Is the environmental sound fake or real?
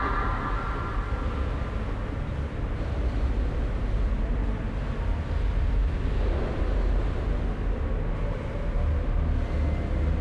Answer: real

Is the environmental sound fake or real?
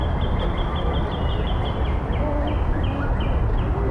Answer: real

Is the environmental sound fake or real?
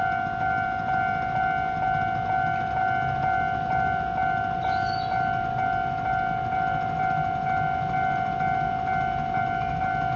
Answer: real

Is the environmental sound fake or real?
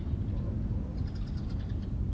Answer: real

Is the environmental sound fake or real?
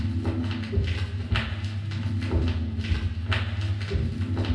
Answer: real